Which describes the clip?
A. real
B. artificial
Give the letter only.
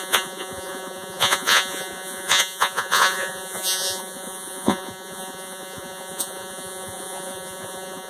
B